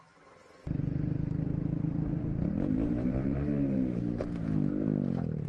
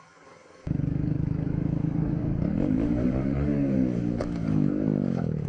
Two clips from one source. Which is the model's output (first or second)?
second